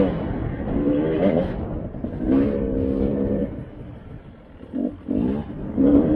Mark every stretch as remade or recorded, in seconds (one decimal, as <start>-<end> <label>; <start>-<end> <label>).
0.0-3.1 recorded; 3.1-4.2 remade; 4.2-6.2 recorded